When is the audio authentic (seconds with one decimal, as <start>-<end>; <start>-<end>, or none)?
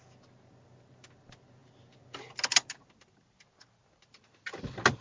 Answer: 0.0-5.0